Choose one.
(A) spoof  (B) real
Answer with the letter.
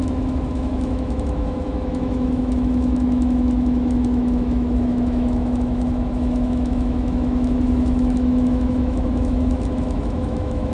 A